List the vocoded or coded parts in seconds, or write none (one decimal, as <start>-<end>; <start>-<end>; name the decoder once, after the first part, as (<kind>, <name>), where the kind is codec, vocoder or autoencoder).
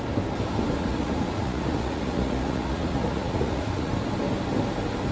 0.8-3.9 (vocoder, Vocos)